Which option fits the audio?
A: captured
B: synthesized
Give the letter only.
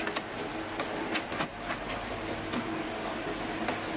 A